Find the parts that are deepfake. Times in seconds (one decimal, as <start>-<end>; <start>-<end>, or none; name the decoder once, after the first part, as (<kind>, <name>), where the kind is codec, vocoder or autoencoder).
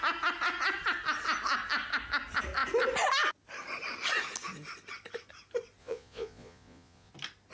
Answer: 5.8-7.1 (vocoder, Vocos)